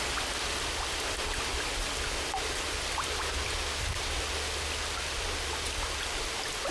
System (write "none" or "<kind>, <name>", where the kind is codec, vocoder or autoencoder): none